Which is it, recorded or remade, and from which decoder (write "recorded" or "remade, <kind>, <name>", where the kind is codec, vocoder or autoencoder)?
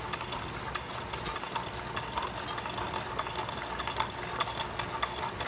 recorded